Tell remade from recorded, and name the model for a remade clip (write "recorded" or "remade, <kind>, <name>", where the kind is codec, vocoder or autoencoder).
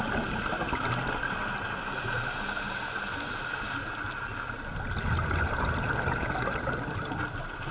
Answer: recorded